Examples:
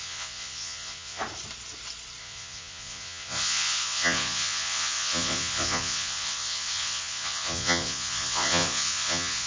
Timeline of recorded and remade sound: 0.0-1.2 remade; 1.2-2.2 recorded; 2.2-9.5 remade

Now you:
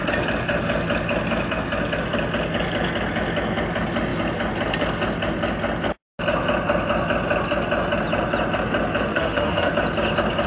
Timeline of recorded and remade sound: 0.0-9.1 recorded; 9.1-9.7 remade; 9.7-10.5 recorded

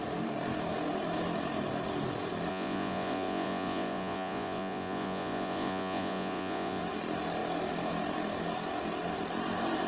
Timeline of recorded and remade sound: 0.0-2.5 recorded; 2.5-6.8 remade; 6.8-9.9 recorded